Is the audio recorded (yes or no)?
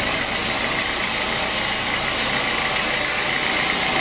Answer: yes